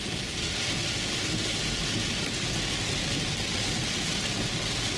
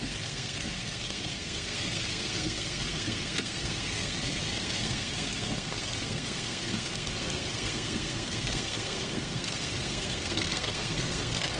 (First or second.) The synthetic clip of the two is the second